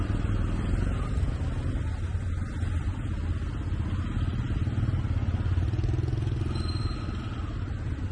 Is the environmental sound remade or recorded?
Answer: recorded